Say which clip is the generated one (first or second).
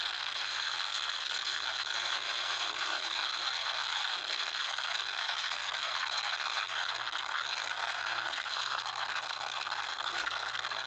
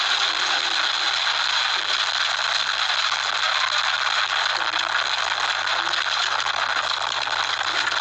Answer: first